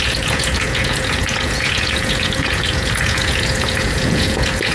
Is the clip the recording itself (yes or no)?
no